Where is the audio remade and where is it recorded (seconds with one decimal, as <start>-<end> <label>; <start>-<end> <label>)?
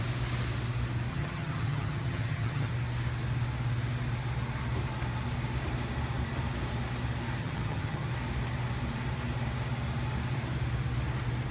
0.0-1.1 recorded; 1.1-2.7 remade; 2.7-7.4 recorded; 7.4-8.1 remade; 8.1-11.5 recorded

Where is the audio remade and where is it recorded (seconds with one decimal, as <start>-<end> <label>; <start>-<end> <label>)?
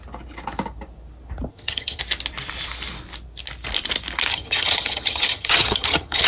0.0-1.5 recorded; 1.5-2.0 remade; 2.0-4.3 recorded; 4.3-6.3 remade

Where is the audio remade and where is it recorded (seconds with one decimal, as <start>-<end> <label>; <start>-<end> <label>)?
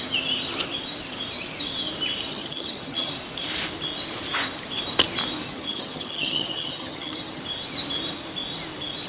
0.0-2.3 recorded; 2.3-3.1 remade; 3.1-5.5 recorded; 5.5-7.4 remade; 7.4-9.1 recorded